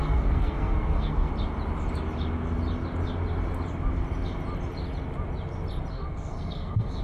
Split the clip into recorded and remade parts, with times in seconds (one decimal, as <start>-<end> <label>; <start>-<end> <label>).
0.0-1.3 remade; 1.3-5.9 recorded; 5.9-7.0 remade